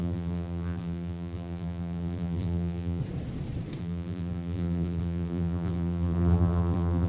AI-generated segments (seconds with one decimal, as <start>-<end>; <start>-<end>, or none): 0.0-3.0; 3.8-7.1